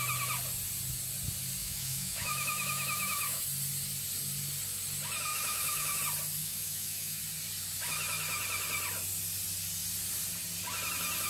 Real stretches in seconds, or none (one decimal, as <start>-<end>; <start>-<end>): 0.0-1.6; 3.4-5.3; 6.0-6.4; 7.2-11.3

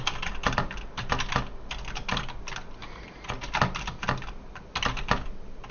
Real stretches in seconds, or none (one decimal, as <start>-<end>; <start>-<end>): 0.0-5.7

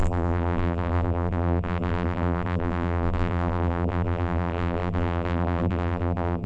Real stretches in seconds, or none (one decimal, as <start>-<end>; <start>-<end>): none

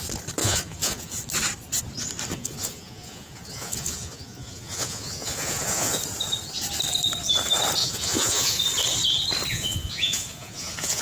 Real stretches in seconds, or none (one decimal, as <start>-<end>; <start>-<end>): 0.0-0.4; 1.2-2.3; 6.0-7.8; 8.6-9.5